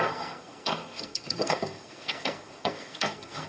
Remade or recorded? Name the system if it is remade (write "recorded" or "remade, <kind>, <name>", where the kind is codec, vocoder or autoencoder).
remade, codec, SNAC